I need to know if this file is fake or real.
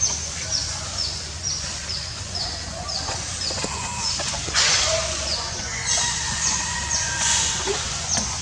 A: fake